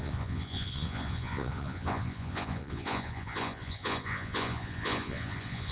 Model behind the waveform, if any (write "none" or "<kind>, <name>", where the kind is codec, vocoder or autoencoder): vocoder, Vocos